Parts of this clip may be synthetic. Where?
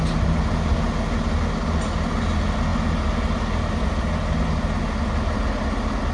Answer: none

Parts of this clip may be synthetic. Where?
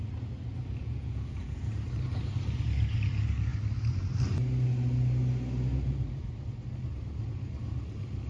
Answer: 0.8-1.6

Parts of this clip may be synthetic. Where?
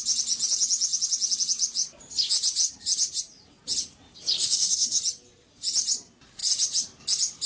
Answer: 4.4-5.0